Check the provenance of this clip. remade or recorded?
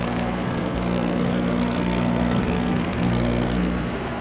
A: remade